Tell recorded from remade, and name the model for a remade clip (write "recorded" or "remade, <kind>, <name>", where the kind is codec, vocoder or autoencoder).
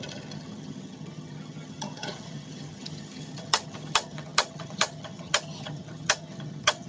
remade, vocoder, HiFi-GAN